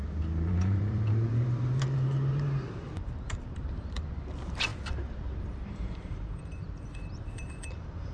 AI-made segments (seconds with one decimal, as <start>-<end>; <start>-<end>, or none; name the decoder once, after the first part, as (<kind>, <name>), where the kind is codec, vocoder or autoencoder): 0.0-6.6 (vocoder, BigVGAN v2); 7.1-8.1